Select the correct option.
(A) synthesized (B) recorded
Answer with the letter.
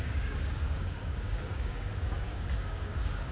A